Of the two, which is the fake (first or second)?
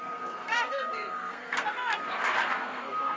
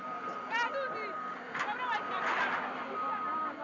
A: first